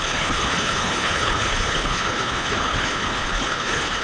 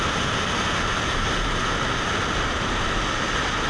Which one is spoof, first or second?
first